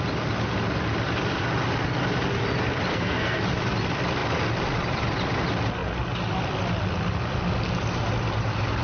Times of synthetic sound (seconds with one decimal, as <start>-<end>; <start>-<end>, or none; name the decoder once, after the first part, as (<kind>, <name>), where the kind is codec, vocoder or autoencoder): 2.9-3.4 (codec, SNAC)